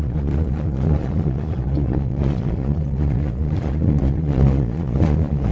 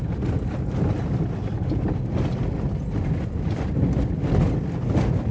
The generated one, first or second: first